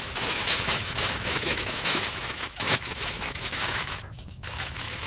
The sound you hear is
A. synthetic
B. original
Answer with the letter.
A